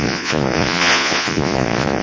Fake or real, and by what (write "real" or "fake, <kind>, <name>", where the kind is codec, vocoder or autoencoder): fake, vocoder, Vocos